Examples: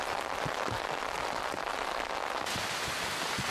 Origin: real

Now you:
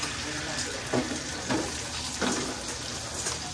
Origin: real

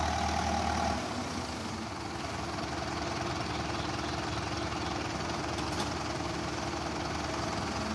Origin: real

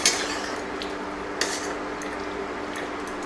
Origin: real